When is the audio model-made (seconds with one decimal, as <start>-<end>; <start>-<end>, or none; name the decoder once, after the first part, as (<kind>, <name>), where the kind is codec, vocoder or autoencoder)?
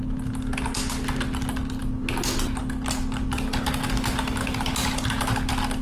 none